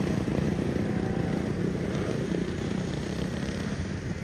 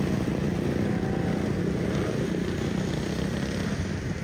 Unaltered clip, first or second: second